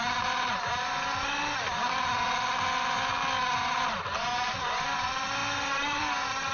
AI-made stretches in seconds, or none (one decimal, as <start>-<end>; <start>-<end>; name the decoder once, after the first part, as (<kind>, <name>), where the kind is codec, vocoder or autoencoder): none

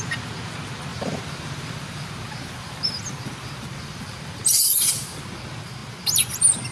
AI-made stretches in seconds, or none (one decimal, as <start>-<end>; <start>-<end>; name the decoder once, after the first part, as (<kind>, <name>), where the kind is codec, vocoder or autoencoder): 0.9-4.9 (vocoder, BigVGAN v2)

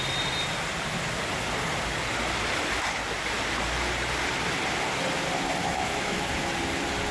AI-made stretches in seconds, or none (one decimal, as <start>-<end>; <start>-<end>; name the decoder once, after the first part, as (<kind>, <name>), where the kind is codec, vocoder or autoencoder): 5.6-6.3 (autoencoder, DAC-VAE)

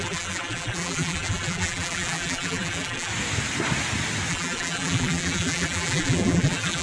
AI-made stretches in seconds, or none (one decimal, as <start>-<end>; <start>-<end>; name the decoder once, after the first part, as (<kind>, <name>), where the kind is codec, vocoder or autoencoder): 0.0-3.1 (vocoder, BigVGAN v2); 4.3-6.8

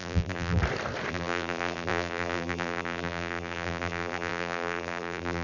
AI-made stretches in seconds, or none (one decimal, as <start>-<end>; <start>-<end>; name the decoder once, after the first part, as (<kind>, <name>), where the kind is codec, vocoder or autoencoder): 0.0-0.6 (vocoder, BigVGAN v2); 1.1-5.4

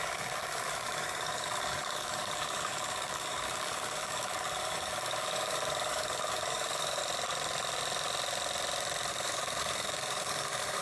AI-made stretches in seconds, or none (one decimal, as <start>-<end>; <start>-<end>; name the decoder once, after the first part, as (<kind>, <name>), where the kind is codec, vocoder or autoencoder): 0.0-7.0 (codec, DAC); 9.1-10.8

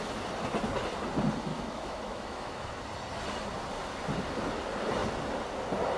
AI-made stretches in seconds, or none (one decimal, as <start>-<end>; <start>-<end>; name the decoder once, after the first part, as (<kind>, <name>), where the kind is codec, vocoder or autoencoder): 1.5-2.8 (autoencoder, DAC-VAE)